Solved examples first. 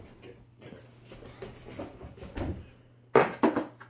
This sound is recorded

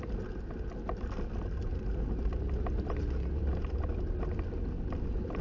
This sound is recorded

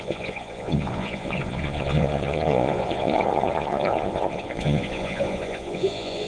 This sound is remade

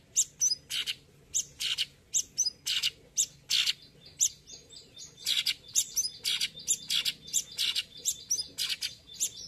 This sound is recorded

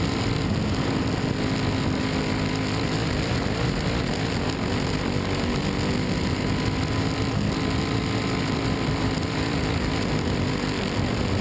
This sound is recorded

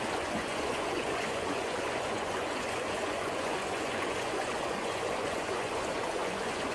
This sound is remade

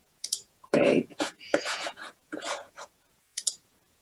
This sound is remade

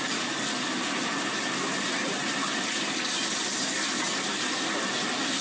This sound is recorded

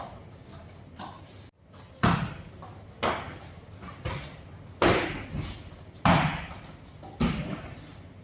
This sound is recorded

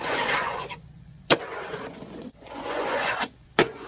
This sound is remade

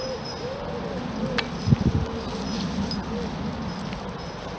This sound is recorded